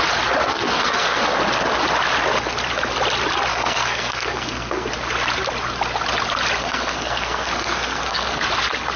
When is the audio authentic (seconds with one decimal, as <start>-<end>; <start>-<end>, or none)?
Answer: 0.0-0.4; 1.2-3.5; 4.9-6.6; 8.4-9.0